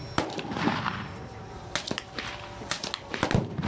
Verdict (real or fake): real